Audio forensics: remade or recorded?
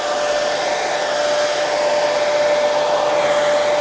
recorded